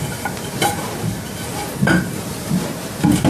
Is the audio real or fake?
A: real